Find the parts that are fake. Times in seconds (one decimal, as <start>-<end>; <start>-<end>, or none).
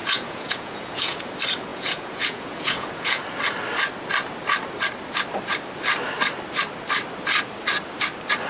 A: 0.0-1.2; 1.7-3.2